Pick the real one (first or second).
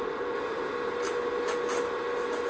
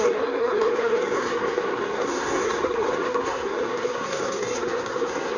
first